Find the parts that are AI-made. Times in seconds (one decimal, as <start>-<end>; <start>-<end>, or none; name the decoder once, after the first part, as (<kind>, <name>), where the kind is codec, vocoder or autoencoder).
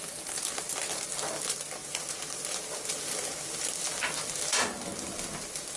1.8-2.6 (vocoder, BigVGAN v2); 4.9-5.8